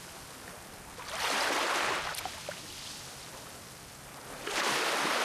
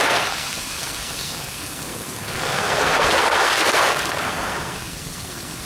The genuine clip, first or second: first